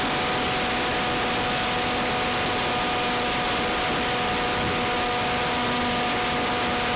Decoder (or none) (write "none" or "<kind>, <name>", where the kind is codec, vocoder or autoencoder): none